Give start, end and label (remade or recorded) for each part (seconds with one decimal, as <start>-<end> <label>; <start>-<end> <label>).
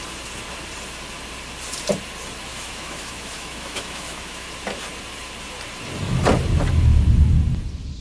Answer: 0.0-2.5 recorded; 2.5-4.5 remade; 4.5-8.0 recorded